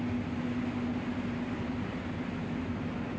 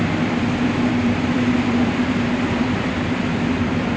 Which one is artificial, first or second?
second